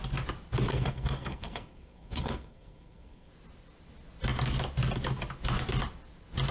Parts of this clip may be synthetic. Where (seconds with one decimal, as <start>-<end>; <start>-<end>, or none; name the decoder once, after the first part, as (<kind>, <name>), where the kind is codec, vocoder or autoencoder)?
0.7-3.3 (codec, SNAC)